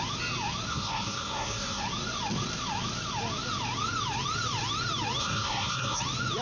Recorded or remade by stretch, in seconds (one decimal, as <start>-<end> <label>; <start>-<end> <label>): 0.0-0.7 recorded; 0.7-1.8 remade; 1.8-5.2 recorded; 5.2-6.0 remade; 6.0-6.4 recorded